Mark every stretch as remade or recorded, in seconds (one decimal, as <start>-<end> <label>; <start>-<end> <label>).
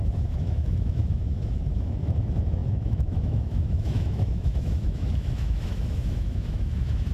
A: 0.0-7.1 remade